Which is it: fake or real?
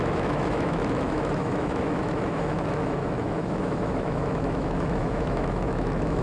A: fake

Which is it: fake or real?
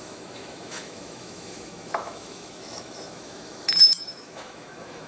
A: fake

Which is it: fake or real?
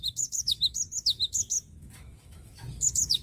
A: fake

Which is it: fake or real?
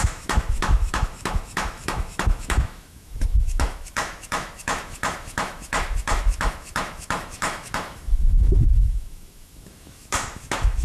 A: fake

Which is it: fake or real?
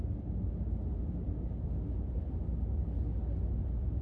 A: real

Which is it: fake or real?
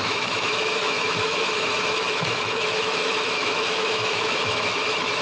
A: fake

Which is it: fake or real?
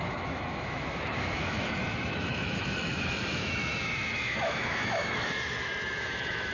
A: fake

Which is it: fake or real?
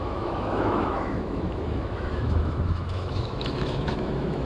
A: fake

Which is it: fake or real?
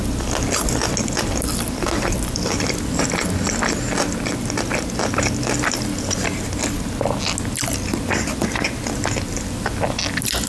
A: real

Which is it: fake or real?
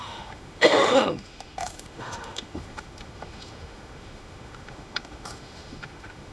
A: fake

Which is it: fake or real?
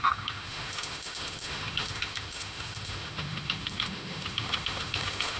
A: fake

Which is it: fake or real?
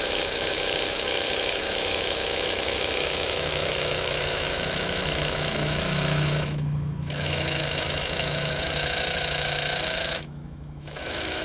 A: fake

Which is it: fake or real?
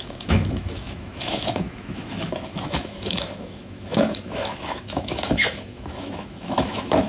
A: fake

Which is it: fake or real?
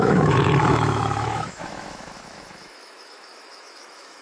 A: fake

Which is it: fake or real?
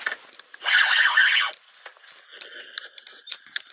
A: real